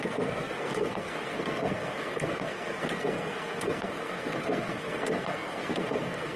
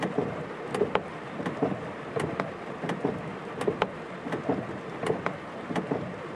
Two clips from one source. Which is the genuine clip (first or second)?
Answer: second